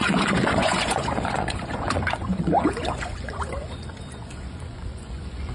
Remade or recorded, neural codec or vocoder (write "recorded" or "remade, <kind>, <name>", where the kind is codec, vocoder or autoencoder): remade, vocoder, Vocos